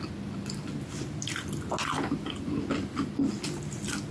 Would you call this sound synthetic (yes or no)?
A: no